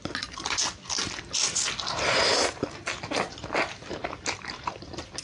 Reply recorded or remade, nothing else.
recorded